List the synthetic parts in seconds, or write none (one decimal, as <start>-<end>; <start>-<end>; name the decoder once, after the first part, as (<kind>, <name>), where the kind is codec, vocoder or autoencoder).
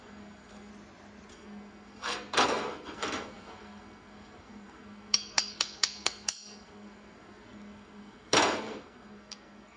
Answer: 0.0-0.7 (codec, SNAC); 1.3-9.8